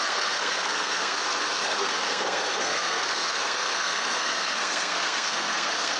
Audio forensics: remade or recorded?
remade